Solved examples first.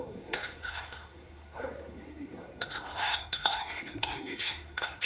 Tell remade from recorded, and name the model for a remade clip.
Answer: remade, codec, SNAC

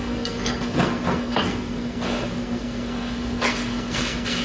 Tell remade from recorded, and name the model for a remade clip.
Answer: remade, codec, SNAC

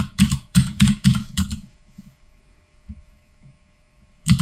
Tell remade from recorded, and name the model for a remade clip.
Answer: remade, codec, DAC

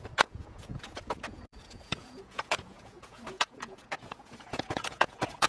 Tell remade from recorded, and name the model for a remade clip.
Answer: remade, vocoder, Vocos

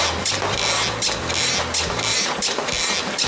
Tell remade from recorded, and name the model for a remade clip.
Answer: recorded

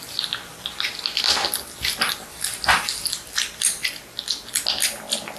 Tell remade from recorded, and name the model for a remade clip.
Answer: recorded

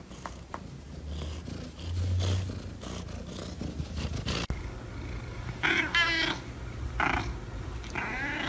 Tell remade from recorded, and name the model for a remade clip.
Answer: recorded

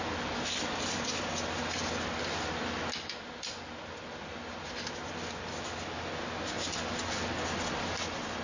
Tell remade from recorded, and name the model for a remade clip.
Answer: recorded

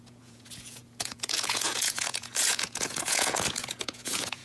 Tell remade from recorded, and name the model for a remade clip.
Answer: remade, vocoder, Vocos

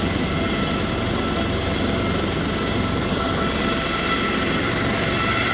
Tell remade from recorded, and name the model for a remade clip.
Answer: recorded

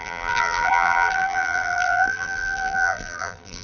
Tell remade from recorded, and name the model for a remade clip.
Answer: remade, vocoder, BigVGAN v2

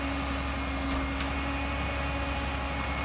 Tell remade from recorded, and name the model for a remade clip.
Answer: recorded